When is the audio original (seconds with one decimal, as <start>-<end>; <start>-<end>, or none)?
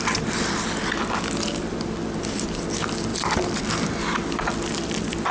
0.0-5.3